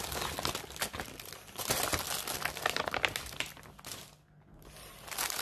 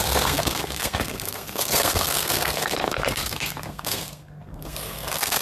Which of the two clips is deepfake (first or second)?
second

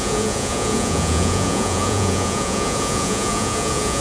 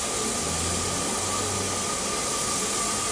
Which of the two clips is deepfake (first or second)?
first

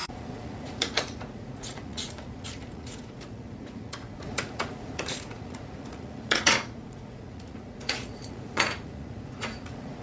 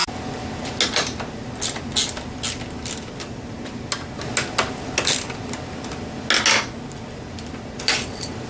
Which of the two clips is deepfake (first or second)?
first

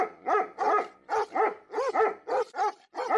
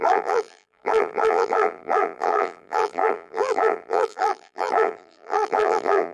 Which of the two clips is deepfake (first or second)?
second